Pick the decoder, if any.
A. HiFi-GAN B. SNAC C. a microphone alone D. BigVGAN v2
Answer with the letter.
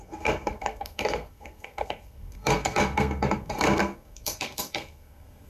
B